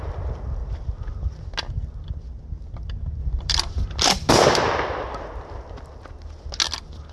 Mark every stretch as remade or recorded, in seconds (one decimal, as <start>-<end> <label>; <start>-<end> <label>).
0.0-0.6 recorded; 0.6-1.4 remade; 1.4-3.2 recorded; 3.2-4.3 remade; 4.3-7.1 recorded